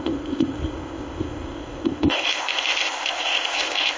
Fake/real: fake